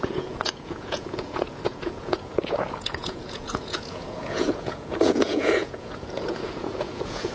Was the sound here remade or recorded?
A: remade